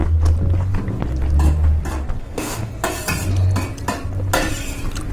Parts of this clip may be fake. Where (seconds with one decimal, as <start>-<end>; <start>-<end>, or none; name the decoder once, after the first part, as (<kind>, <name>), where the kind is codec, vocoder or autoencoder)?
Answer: 2.2-2.7 (autoencoder, DAC-VAE)